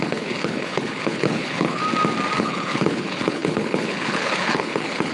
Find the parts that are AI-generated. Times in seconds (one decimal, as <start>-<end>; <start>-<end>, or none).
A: 0.0-1.8; 2.4-5.1